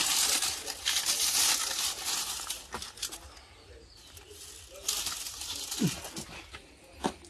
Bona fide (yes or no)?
yes